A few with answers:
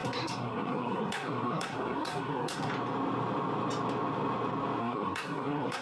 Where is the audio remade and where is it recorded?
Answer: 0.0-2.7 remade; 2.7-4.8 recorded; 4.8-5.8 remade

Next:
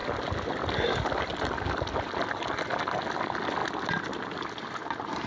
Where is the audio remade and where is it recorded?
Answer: 0.0-5.3 recorded